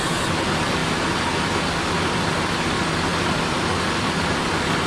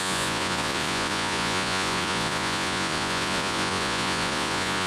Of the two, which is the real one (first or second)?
first